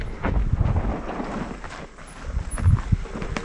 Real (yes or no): yes